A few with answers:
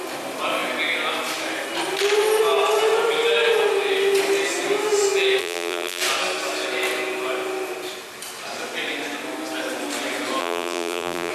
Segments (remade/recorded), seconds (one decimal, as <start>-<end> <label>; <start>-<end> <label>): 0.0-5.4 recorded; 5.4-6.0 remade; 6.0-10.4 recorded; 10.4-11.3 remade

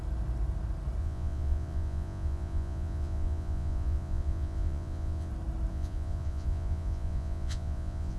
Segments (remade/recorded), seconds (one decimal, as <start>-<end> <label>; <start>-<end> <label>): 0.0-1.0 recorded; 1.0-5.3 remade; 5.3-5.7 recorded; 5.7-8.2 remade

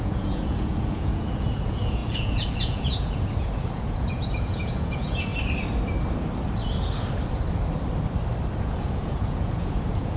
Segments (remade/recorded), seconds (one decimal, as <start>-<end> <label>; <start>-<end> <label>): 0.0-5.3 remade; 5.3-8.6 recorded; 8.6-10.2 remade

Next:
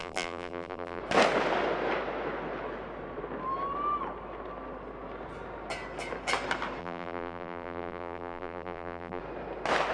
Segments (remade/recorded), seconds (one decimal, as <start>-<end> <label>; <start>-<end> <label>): 0.0-1.0 remade; 1.0-6.8 recorded; 6.8-9.2 remade; 9.2-9.9 recorded